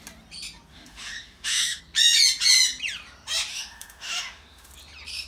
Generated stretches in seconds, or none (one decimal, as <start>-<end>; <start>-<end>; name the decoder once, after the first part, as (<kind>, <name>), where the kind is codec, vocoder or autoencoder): 0.7-1.8 (autoencoder, DAC-VAE); 3.5-4.7